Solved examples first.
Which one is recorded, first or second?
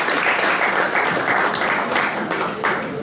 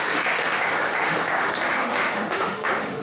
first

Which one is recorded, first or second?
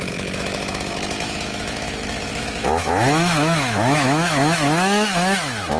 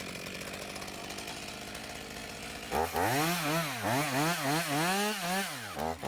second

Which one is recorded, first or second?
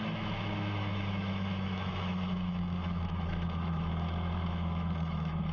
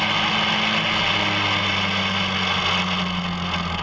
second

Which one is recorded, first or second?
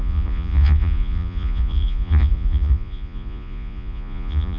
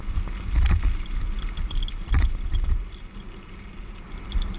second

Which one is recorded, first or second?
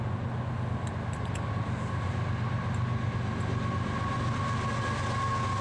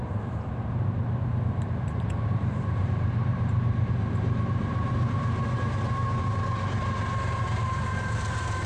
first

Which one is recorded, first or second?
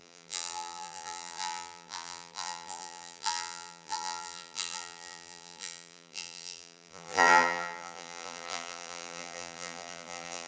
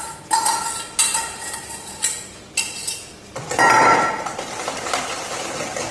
second